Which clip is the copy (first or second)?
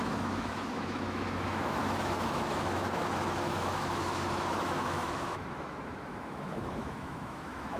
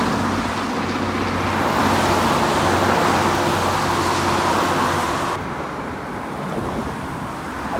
first